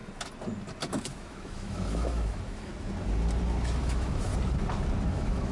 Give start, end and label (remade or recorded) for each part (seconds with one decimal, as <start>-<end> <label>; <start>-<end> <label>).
0.0-0.9 recorded; 0.9-2.7 remade; 2.7-3.8 recorded; 3.8-4.3 remade; 4.3-5.1 recorded; 5.1-5.5 remade